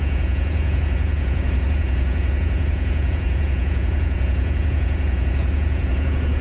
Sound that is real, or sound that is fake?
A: fake